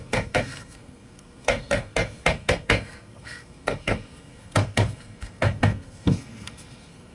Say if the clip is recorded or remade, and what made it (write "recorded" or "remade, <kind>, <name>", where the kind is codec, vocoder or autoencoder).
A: remade, codec, SNAC